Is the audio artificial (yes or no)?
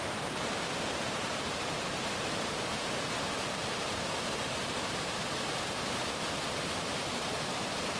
yes